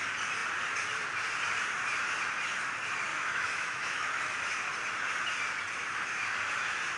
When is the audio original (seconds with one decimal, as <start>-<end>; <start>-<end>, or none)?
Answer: 0.0-3.1; 4.5-7.0